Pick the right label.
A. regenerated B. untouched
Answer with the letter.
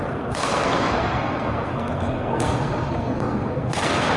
A